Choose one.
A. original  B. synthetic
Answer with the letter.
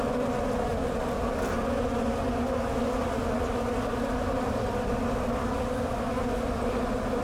A